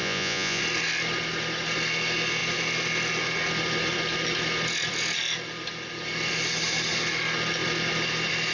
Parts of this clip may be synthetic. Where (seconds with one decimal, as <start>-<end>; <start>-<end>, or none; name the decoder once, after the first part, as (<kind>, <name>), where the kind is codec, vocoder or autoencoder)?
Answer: 0.0-0.6 (vocoder, Vocos)